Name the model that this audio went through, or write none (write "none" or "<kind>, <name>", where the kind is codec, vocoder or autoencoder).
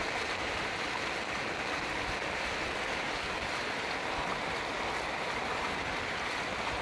none